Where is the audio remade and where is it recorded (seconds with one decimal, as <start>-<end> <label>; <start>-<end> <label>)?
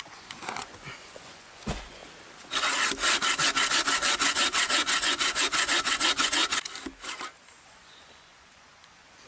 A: 0.0-2.0 remade; 2.0-3.7 recorded; 3.7-6.4 remade; 6.4-7.5 recorded; 7.5-9.3 remade